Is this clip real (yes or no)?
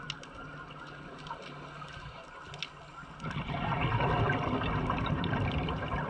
yes